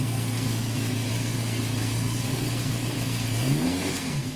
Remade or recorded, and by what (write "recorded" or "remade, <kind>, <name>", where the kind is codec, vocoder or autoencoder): remade, codec, SNAC